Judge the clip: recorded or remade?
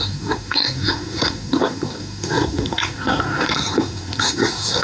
remade